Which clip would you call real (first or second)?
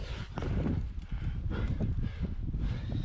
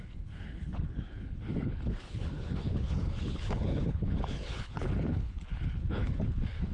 first